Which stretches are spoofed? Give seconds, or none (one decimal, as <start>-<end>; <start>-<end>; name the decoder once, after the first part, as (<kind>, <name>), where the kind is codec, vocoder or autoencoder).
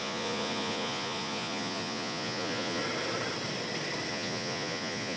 0.0-2.8 (vocoder, Vocos); 4.1-5.2